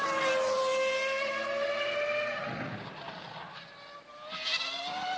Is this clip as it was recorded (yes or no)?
yes